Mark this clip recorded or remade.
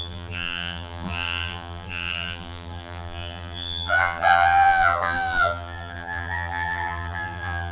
remade